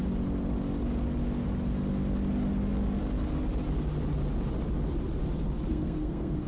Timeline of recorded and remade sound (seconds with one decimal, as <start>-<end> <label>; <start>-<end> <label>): 0.0-5.7 recorded; 5.7-6.5 remade